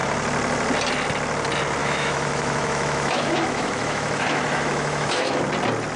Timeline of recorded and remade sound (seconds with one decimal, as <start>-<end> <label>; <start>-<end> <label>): 0.0-1.8 recorded; 1.8-5.4 remade; 5.4-6.0 recorded